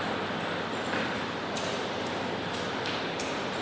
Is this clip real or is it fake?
fake